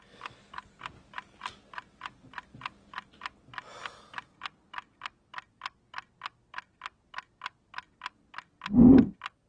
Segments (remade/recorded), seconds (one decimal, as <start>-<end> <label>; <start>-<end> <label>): 0.0-9.5 recorded